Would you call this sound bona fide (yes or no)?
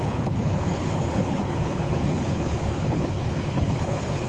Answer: no